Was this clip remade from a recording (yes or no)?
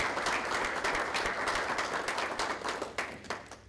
no